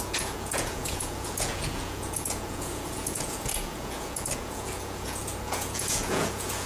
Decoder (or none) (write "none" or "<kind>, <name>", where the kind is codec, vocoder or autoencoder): vocoder, Vocos